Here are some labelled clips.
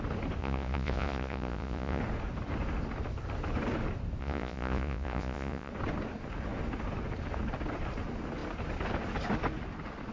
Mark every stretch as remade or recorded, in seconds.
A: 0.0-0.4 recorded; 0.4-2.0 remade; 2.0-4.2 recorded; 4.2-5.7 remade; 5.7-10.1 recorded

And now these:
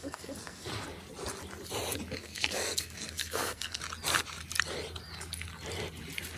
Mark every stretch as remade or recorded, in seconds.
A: 0.0-0.7 remade; 0.7-2.2 recorded; 2.2-3.8 remade; 3.8-6.4 recorded

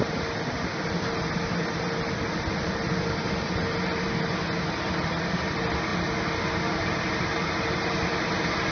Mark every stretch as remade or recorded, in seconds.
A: 0.0-8.7 recorded